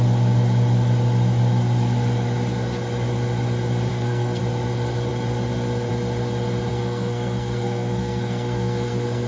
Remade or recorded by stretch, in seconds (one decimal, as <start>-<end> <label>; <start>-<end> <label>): 0.0-3.9 recorded; 3.9-4.4 remade; 4.4-6.7 recorded; 6.7-9.3 remade